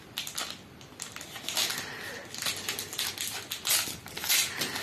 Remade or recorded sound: recorded